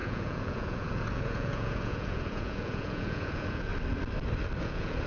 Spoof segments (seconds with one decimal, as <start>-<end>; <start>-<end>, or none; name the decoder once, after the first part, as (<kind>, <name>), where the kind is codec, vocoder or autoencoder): 0.0-3.7 (vocoder, Vocos); 4.6-5.1